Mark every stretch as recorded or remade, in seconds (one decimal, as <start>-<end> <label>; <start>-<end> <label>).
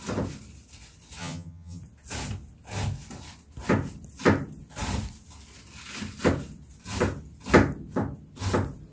0.0-1.2 recorded; 1.2-1.8 remade; 1.8-8.9 recorded